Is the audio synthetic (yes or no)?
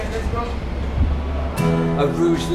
no